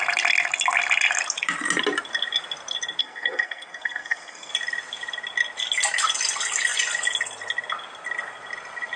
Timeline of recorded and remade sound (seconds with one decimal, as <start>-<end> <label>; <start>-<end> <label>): 0.0-3.0 recorded; 3.0-4.5 remade; 4.5-9.0 recorded